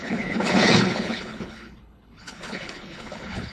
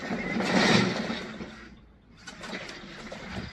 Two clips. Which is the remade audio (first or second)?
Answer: first